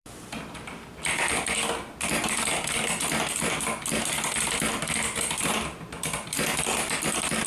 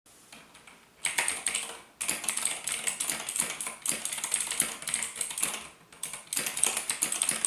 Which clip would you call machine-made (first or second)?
first